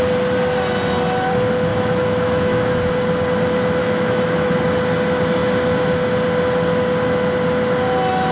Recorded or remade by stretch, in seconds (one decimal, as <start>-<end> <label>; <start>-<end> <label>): 0.0-1.7 recorded; 1.7-2.8 remade; 2.8-3.8 recorded; 3.8-4.5 remade; 4.5-8.3 recorded